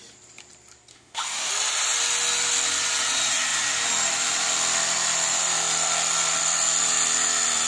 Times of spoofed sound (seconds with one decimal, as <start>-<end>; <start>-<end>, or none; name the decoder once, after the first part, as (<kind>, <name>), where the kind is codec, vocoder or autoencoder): 0.9-1.5 (autoencoder, DAC-VAE)